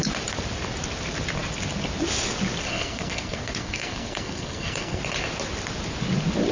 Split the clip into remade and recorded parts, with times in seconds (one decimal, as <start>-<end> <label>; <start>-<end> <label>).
0.0-2.7 recorded; 2.7-5.0 remade; 5.0-6.5 recorded